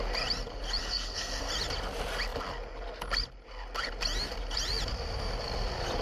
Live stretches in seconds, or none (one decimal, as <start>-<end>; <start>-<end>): 0.0-0.8; 1.4-6.0